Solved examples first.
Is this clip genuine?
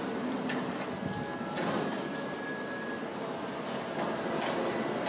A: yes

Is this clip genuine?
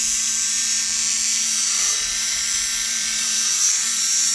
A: no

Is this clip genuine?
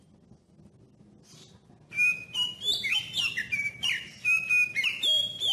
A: yes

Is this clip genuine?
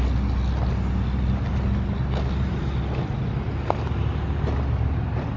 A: yes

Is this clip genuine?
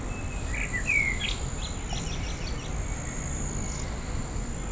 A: yes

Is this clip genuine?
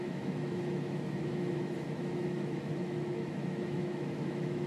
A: no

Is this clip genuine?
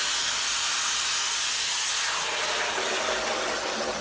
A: yes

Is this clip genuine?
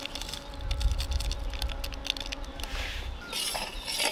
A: yes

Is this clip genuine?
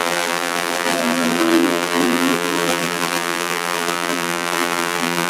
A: no